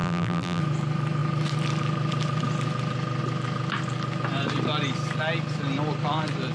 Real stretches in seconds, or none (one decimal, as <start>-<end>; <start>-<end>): 0.6-6.5